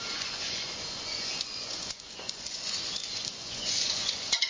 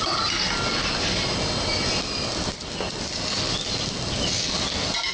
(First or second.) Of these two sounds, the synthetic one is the first